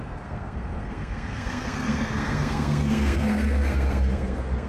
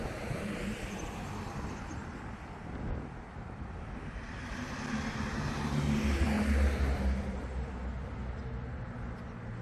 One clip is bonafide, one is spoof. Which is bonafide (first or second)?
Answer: second